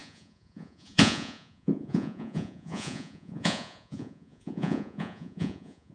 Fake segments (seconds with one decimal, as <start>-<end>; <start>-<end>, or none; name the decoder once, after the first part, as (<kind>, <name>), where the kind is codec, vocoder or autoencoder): 0.0-5.9 (vocoder, Vocos)